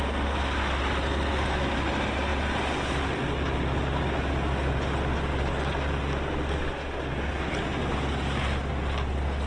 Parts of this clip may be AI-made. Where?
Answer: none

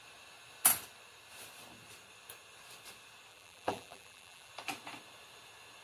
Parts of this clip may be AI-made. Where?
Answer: 3.3-4.5 (vocoder, BigVGAN v2)

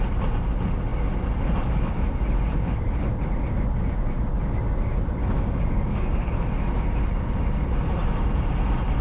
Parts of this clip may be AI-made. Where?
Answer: 5.2-6.3 (codec, DAC)

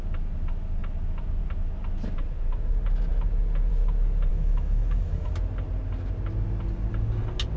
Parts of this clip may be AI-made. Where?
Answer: 4.3-5.3 (autoencoder, DAC-VAE)

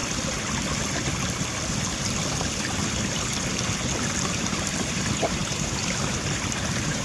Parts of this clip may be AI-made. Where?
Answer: 4.2-7.0 (vocoder, BigVGAN v2)

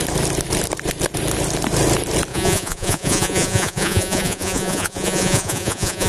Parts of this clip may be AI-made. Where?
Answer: 2.3-6.1 (vocoder, Vocos)

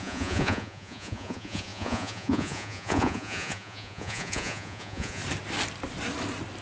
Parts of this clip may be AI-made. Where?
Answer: 0.0-5.2 (vocoder, Vocos)

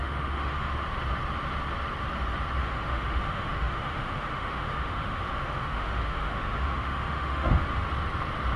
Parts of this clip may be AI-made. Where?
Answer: 0.0-0.7 (autoencoder, DAC-VAE); 2.6-7.8